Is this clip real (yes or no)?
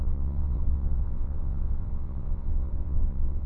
no